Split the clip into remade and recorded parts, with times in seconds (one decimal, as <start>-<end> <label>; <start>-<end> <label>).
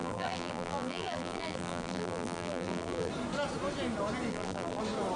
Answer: 0.0-3.1 remade; 3.1-4.3 recorded; 4.3-4.8 remade; 4.8-5.2 recorded